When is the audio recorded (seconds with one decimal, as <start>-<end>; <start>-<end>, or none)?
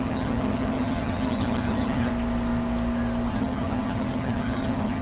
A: 2.1-3.3